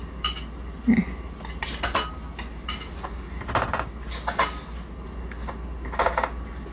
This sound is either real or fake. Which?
real